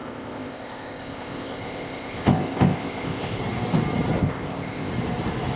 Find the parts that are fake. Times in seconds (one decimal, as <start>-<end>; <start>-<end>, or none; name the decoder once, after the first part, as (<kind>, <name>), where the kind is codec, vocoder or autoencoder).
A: 0.0-3.4 (codec, ZipCodec); 4.2-4.9